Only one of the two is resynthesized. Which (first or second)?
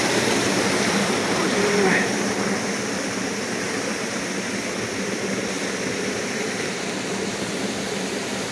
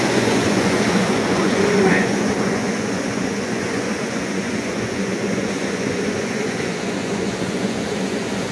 second